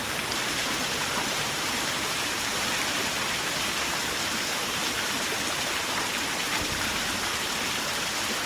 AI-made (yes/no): yes